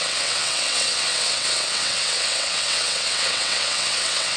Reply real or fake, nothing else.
fake